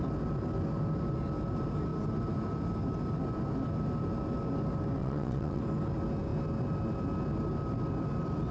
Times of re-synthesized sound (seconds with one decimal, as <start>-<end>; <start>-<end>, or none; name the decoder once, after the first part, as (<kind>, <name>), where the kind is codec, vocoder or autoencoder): 5.0-5.6 (vocoder, WaveNeXt)